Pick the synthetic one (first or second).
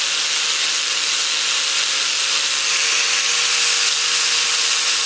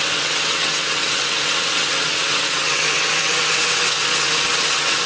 second